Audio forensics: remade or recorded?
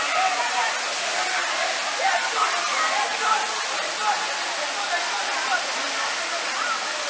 recorded